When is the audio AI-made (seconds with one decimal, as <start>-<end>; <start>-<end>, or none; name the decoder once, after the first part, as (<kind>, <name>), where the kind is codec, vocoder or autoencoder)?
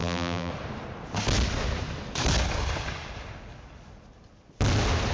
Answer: 0.0-0.5 (vocoder, BigVGAN v2)